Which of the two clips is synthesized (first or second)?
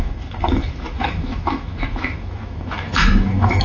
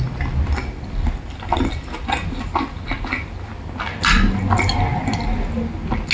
first